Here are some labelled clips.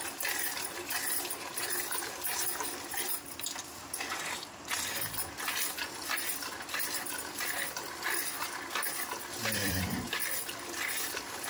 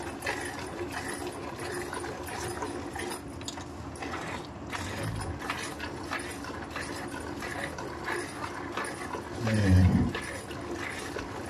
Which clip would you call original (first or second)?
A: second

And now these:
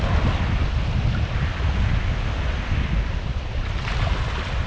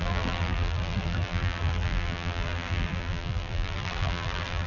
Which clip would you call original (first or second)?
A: first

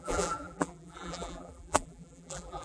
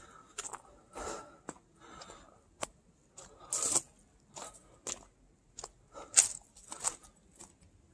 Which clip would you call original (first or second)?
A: second